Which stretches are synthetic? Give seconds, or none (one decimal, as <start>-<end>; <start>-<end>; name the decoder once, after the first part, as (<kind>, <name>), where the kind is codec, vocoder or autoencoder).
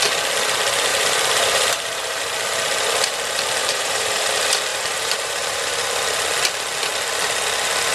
0.9-2.2 (vocoder, BigVGAN v2); 3.6-4.3; 4.7-5.6